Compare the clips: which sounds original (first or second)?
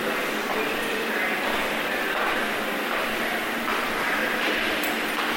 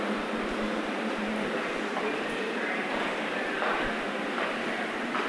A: first